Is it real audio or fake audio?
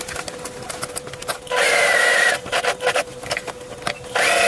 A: real